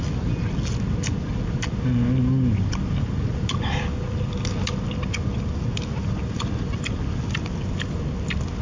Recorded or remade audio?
recorded